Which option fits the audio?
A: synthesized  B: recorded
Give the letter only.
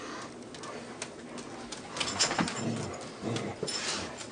B